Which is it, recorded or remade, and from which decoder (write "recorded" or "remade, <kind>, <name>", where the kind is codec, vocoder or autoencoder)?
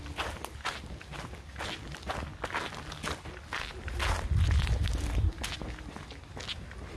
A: recorded